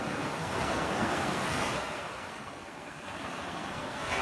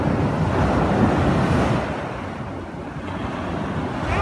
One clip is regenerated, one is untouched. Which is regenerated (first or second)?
first